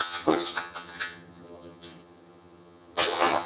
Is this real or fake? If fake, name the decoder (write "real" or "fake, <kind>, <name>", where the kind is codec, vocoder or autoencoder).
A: fake, vocoder, HiFi-GAN